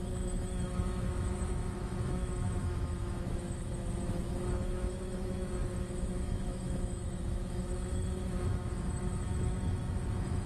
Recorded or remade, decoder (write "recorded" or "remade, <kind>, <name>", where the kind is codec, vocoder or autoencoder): remade, autoencoder, DAC-VAE